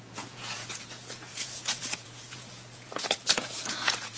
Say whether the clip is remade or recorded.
remade